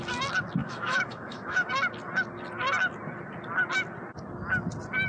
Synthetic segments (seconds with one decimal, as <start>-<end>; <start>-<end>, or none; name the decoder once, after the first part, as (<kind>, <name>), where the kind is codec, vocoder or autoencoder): 0.6-1.7 (autoencoder, DAC-VAE)

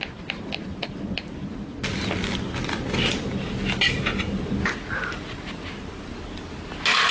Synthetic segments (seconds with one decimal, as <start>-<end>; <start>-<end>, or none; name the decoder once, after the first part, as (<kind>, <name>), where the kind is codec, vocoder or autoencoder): none

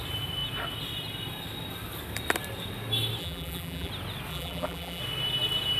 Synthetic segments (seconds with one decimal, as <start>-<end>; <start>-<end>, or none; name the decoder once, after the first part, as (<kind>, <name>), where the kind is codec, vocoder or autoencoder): 3.2-3.9 (vocoder, BigVGAN v2); 4.3-5.0

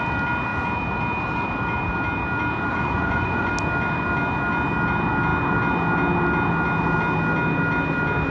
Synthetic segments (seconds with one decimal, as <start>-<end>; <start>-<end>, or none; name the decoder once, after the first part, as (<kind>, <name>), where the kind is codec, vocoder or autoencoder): 2.7-3.5 (vocoder, Vocos)

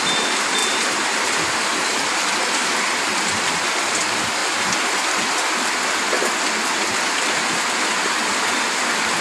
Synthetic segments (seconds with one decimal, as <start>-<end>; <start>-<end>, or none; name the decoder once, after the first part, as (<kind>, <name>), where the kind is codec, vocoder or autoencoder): 0.6-4.0 (vocoder, BigVGAN v2)

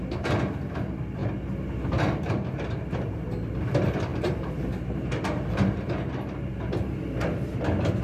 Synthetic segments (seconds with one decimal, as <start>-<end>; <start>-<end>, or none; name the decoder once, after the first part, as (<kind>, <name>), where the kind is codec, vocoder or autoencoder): 4.1-5.9 (vocoder, BigVGAN v2)